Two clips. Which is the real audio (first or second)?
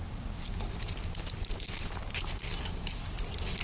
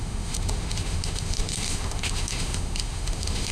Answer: first